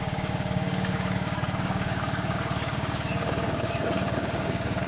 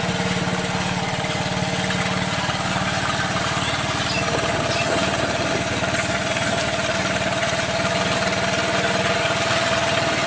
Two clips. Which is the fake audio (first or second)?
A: first